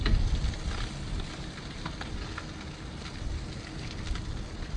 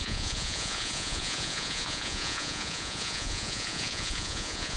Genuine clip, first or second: first